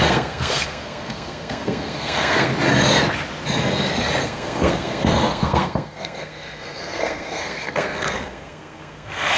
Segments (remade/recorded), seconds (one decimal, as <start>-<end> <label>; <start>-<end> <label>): 0.0-2.5 remade; 2.5-4.2 recorded; 4.2-9.4 remade